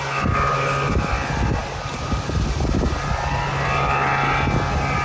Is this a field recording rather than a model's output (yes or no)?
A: yes